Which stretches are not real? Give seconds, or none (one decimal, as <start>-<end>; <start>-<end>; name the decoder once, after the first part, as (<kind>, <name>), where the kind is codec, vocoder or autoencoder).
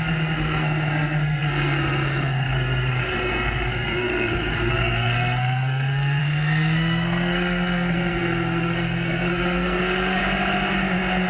0.0-10.2 (codec, SNAC)